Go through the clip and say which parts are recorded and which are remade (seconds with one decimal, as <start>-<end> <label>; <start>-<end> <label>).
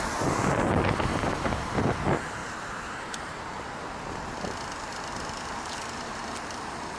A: 0.0-1.1 recorded; 1.1-1.6 remade; 1.6-2.4 recorded; 2.4-3.6 remade; 3.6-7.0 recorded